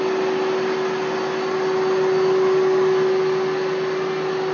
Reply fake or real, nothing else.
real